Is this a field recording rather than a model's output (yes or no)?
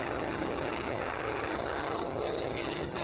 no